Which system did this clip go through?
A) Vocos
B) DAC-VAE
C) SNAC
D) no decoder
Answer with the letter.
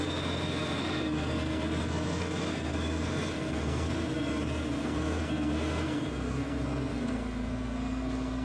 C